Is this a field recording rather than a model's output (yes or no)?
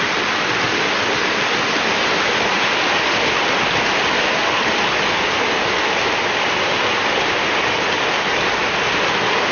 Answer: yes